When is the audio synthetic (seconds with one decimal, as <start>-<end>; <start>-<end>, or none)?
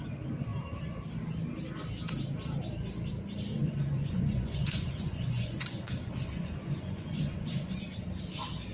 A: 3.5-7.8